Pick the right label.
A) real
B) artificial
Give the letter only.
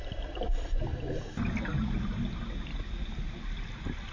A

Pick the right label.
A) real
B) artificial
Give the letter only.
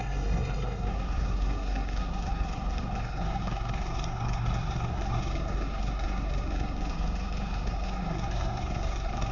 B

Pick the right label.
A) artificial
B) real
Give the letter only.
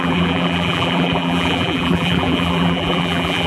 A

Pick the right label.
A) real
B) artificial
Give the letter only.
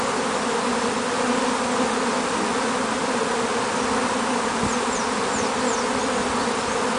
B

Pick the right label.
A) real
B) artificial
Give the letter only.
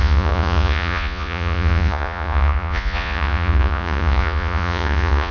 B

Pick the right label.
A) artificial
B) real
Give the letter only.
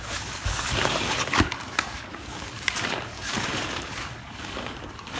A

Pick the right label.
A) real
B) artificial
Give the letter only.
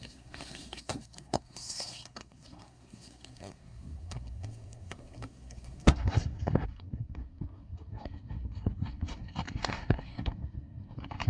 B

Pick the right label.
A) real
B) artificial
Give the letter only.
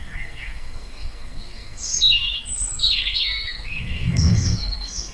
B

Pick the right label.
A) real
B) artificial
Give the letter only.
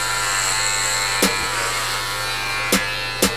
A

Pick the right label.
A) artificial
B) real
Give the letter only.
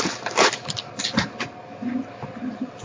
B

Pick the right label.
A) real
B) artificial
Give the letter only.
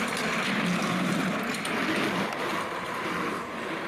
A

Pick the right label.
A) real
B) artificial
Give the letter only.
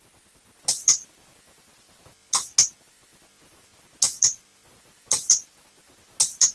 A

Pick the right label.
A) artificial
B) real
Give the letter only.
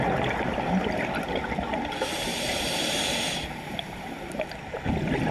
B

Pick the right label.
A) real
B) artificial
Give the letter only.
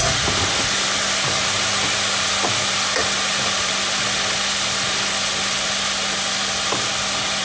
A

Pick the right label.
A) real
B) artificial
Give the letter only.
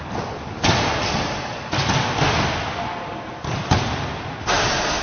A